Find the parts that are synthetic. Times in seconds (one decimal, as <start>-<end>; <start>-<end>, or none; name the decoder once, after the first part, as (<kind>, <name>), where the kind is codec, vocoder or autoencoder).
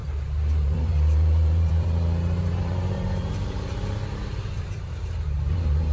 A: 0.0-4.0 (vocoder, BigVGAN v2); 4.9-5.9